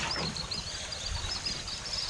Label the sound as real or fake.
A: real